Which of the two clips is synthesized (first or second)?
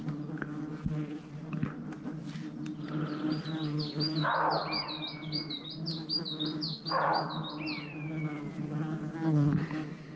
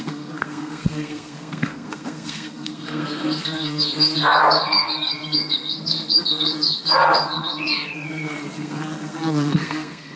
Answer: second